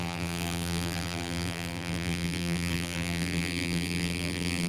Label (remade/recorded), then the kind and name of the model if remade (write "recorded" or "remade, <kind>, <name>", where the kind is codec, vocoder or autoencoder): remade, vocoder, BigVGAN v2